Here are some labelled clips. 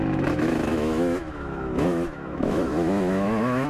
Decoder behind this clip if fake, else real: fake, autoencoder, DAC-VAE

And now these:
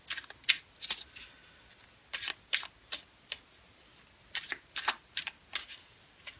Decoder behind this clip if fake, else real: real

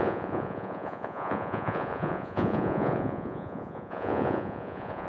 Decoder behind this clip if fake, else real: fake, vocoder, Vocos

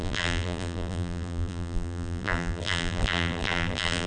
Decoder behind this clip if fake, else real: fake, vocoder, BigVGAN v2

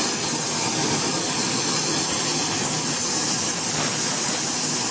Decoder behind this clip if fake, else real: real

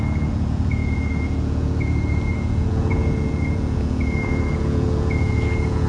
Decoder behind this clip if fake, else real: fake, vocoder, Vocos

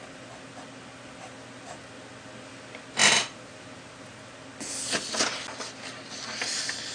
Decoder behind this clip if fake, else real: real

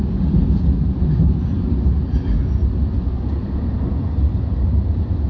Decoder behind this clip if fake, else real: real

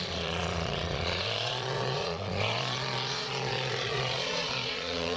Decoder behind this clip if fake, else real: fake, vocoder, Vocos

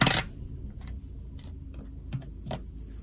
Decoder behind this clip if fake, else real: real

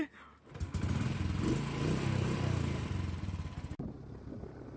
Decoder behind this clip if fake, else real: real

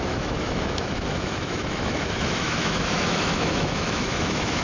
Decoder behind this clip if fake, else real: fake, autoencoder, DAC-VAE